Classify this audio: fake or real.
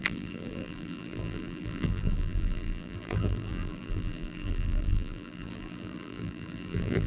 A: fake